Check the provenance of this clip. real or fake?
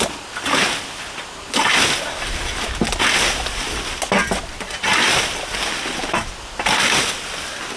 real